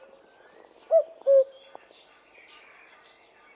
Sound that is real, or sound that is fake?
real